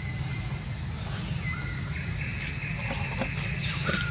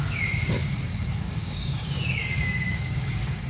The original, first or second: first